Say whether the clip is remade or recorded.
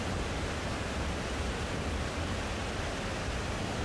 recorded